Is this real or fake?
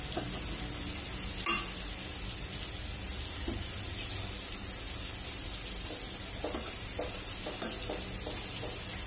real